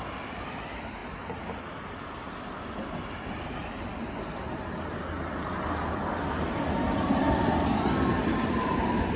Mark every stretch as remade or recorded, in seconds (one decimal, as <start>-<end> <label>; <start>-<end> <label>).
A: 0.0-1.0 remade; 1.0-2.2 recorded; 2.2-3.6 remade; 3.6-5.1 recorded; 5.1-9.2 remade